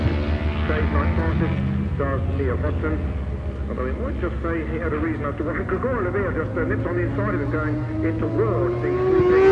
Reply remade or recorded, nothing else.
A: recorded